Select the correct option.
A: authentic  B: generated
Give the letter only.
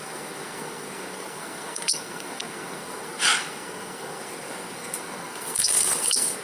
B